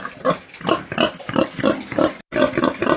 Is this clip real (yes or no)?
yes